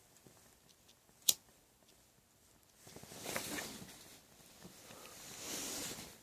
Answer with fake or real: real